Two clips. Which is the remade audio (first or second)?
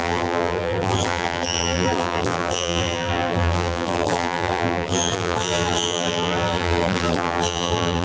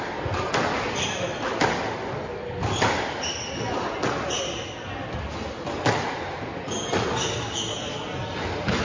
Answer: first